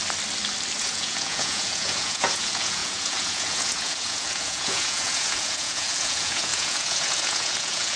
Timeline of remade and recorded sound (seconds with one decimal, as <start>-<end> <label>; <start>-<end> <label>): 0.0-0.8 recorded; 0.8-8.0 remade